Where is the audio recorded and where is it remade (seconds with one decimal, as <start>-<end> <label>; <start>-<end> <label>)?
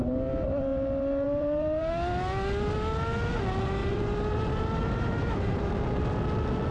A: 0.0-0.7 recorded; 0.7-1.9 remade; 1.9-3.8 recorded; 3.8-6.0 remade; 6.0-6.7 recorded